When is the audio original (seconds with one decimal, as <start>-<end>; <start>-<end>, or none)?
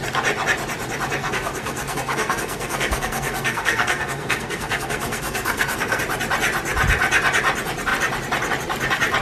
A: 0.0-1.2; 6.0-9.2